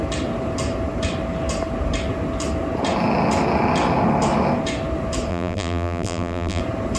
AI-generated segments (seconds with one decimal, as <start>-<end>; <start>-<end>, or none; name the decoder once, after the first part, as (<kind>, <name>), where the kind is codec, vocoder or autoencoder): 5.3-6.6 (vocoder, BigVGAN v2)